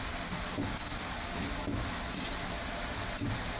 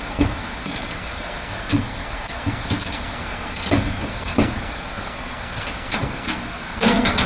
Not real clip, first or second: second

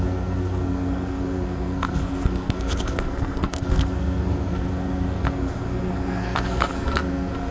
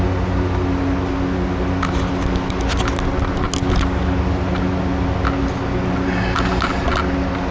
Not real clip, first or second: first